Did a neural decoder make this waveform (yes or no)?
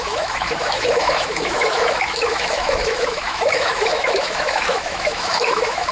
yes